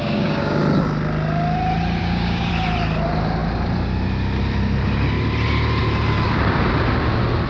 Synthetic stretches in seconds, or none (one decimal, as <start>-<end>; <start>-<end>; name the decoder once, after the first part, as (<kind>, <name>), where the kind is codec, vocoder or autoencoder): 0.0-0.6 (codec, DAC); 2.0-2.5

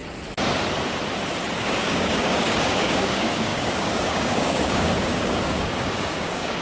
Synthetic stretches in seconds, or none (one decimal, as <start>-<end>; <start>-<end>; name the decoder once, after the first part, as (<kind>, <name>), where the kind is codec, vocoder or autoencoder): 1.6-6.6 (codec, DAC)

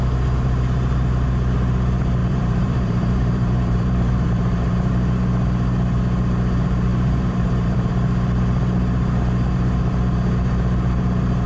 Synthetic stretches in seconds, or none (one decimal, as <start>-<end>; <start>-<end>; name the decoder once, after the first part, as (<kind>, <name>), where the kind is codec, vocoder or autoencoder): 2.2-4.9 (vocoder, BigVGAN v2); 6.9-7.9

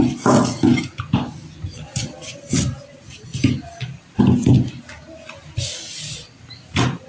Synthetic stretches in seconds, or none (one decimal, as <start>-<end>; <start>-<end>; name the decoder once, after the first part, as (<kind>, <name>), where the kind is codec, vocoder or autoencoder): none

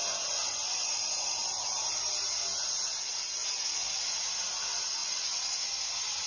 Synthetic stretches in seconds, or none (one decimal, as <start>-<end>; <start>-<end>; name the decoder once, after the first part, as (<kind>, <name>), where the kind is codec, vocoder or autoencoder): none

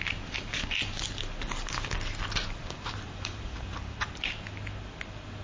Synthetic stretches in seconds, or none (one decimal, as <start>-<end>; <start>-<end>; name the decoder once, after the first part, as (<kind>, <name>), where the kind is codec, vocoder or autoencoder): 2.6-4.2 (vocoder, BigVGAN v2)

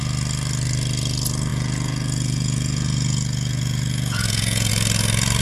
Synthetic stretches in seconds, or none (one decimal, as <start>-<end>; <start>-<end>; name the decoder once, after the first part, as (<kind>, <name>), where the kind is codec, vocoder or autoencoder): 1.5-4.7 (vocoder, Vocos)